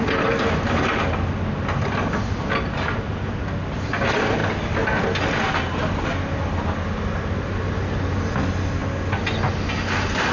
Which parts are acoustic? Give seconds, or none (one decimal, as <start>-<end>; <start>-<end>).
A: 0.0-10.3